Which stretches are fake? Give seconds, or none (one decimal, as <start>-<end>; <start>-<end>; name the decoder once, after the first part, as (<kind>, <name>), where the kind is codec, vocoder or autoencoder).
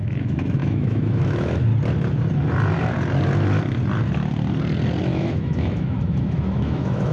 0.0-1.7 (autoencoder, DAC-VAE); 5.0-7.1